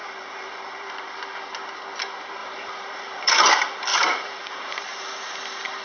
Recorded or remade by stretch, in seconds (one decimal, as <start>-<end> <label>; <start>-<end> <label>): 0.0-1.2 remade; 1.2-2.4 recorded; 2.4-3.5 remade; 3.5-3.9 recorded; 3.9-5.0 remade; 5.0-5.8 recorded